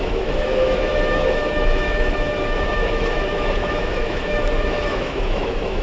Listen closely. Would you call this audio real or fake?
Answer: fake